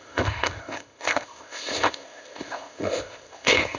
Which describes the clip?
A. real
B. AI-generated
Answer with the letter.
B